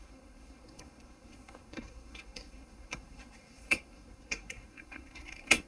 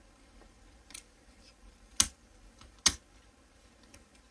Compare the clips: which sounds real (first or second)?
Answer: second